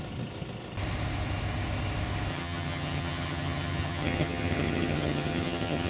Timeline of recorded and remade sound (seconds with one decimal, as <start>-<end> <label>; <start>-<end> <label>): 0.0-2.3 recorded; 2.3-5.9 remade